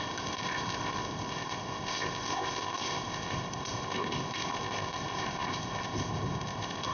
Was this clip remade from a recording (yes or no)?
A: yes